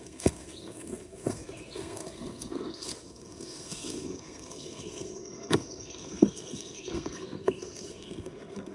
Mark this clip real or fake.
fake